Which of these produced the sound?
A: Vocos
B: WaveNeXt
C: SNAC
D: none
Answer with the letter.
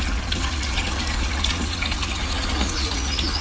A